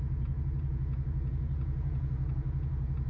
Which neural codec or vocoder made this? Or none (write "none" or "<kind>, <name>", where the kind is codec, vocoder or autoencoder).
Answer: vocoder, Vocos